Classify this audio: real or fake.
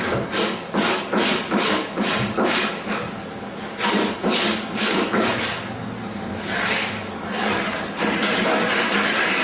fake